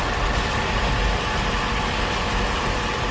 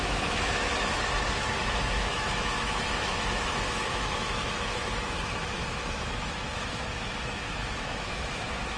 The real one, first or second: first